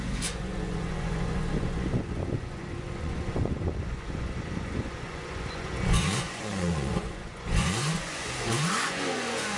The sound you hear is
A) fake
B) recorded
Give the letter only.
A